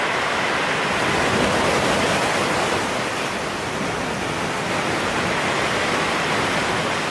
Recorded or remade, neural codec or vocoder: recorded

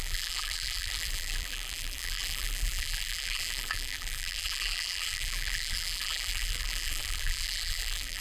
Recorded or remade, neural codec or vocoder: remade, vocoder, BigVGAN v2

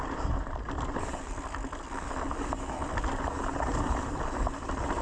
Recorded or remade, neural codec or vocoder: remade, vocoder, BigVGAN v2